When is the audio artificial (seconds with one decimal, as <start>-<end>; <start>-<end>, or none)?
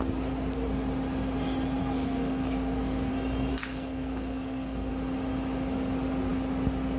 1.8-3.1; 3.5-4.9